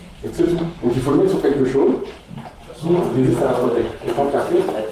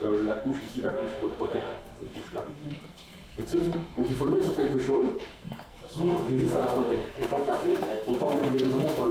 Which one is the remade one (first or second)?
second